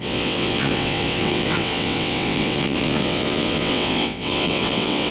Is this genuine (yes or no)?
no